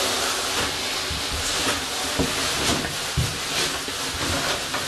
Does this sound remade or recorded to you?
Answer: recorded